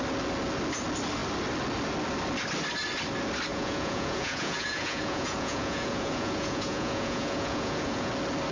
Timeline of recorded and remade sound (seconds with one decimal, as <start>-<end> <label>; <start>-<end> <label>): 0.0-3.5 recorded; 3.5-8.1 remade; 8.1-8.5 recorded